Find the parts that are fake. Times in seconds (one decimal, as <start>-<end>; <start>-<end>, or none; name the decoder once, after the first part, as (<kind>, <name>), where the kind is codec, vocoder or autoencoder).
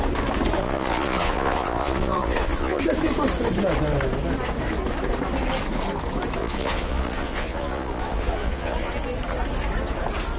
0.6-2.8 (vocoder, Vocos); 6.4-8.9